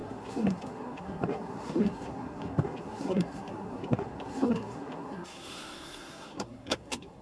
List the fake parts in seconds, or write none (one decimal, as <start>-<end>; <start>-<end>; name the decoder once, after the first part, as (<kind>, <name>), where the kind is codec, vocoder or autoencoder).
0.0-7.2 (codec, SNAC)